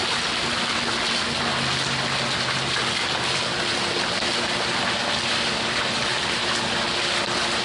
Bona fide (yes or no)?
yes